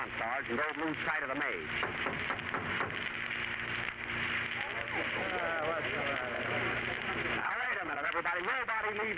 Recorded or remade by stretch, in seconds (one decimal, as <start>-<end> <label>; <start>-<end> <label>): 0.0-7.4 recorded; 7.4-8.1 remade; 8.1-9.2 recorded